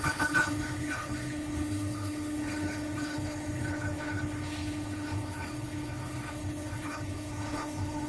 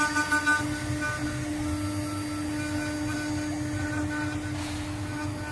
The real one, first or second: second